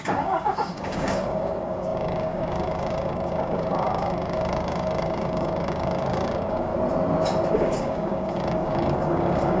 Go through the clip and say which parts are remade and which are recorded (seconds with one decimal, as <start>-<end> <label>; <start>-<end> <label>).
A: 0.0-6.7 remade; 6.7-7.5 recorded; 7.5-9.6 remade